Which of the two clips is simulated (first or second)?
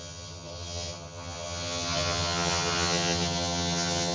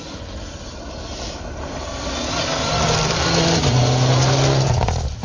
first